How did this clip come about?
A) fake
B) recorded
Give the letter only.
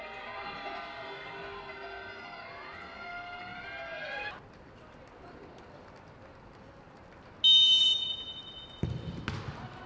B